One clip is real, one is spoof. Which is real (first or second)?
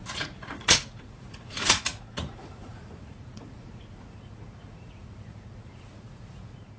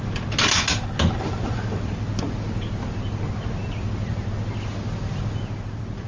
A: second